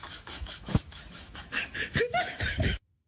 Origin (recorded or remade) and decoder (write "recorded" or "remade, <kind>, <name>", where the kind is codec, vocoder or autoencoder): remade, autoencoder, DAC-VAE